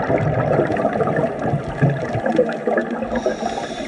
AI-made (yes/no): yes